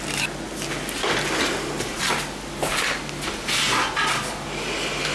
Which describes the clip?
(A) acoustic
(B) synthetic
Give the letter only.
A